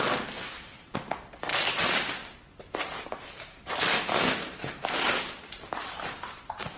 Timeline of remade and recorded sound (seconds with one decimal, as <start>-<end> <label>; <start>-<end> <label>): 0.0-6.8 recorded